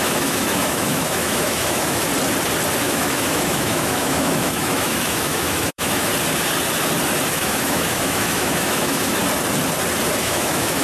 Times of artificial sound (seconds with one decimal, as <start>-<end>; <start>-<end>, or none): 0.0-2.1; 2.8-6.1; 7.3-9.2; 10.2-10.8

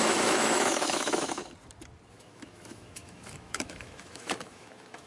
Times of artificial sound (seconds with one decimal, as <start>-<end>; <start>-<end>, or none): 0.0-1.4; 2.1-5.1

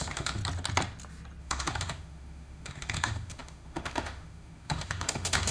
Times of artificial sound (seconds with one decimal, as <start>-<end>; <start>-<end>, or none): 0.0-0.4; 1.4-5.5